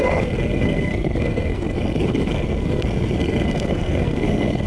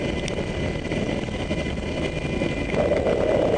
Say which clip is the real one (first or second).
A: second